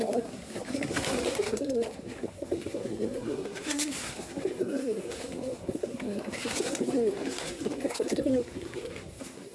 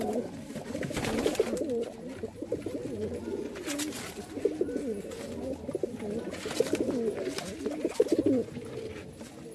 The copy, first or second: first